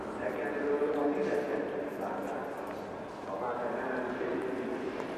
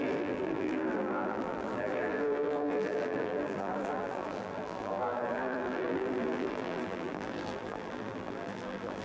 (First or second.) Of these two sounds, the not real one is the second